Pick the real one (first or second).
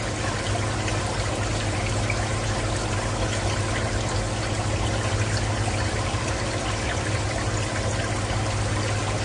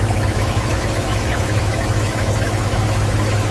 first